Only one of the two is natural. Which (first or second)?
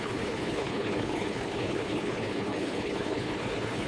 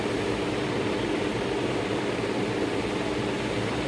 second